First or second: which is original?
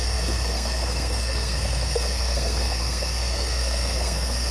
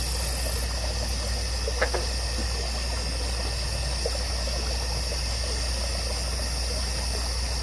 second